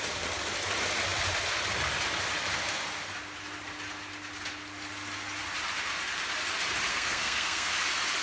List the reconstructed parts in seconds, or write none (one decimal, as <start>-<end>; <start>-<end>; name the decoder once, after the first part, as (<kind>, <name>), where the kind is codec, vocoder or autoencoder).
6.9-7.7 (codec, SNAC)